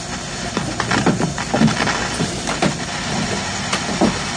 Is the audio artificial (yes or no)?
no